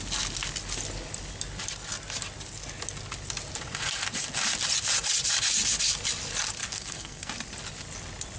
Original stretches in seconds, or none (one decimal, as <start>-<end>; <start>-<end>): 0.0-6.6; 7.3-8.4